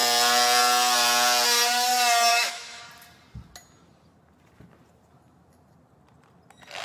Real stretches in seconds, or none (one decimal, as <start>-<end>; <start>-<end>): 0.0-2.3; 2.8-6.8